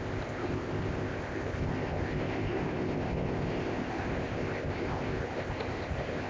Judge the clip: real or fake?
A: fake